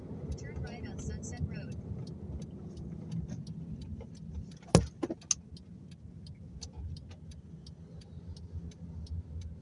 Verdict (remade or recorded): recorded